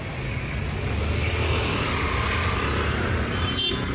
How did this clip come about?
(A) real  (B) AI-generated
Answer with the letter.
A